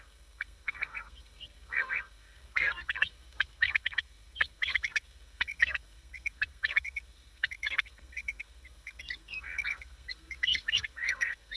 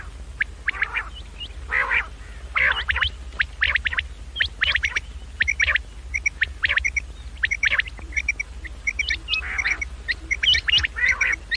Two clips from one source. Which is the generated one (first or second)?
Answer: first